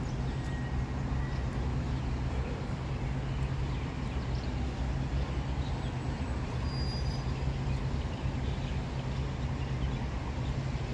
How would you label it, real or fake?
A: real